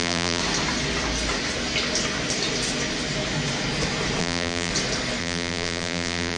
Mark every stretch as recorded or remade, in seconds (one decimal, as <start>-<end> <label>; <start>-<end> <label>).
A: 0.0-0.4 remade; 0.4-4.2 recorded; 4.2-4.7 remade; 4.7-5.2 recorded; 5.2-6.4 remade